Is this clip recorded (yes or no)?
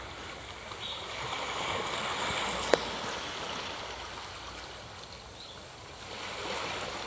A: yes